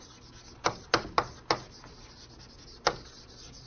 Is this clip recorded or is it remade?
recorded